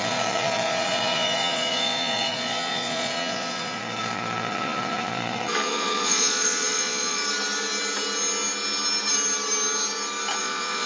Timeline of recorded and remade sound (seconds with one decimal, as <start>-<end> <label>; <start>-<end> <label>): 0.0-7.2 remade; 7.2-10.4 recorded; 10.4-10.9 remade